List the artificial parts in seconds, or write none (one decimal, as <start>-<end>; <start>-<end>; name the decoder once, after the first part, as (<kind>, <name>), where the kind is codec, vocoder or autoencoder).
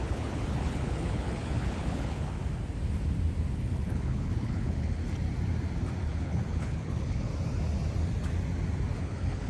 0.0-2.4 (codec, HILCodec); 3.5-5.0; 6.0-7.3; 9.0-9.5